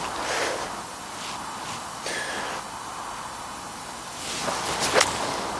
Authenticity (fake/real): real